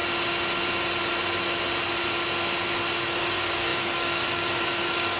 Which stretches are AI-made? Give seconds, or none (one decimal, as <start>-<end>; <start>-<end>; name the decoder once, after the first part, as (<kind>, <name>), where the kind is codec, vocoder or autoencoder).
3.1-5.2 (codec, DAC)